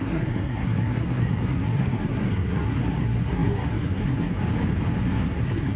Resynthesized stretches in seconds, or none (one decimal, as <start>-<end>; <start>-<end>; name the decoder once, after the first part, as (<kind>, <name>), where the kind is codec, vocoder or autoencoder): 0.0-4.4 (codec, SNAC); 5.0-5.8